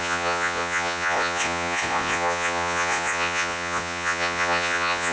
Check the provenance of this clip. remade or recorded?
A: remade